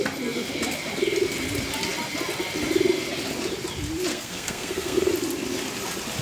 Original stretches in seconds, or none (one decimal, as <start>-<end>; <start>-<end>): 0.0-4.1; 5.1-6.2